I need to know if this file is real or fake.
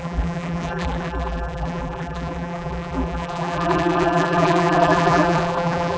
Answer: fake